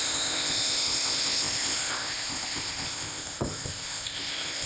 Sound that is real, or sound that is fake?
fake